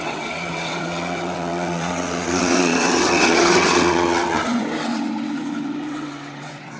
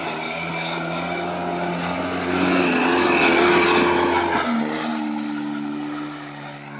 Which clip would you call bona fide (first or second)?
second